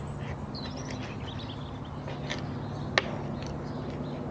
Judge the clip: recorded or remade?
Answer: recorded